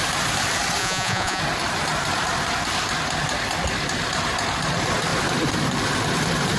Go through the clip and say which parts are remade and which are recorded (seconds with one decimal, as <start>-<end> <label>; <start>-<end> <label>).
0.0-0.8 recorded; 0.8-1.4 remade; 1.4-6.6 recorded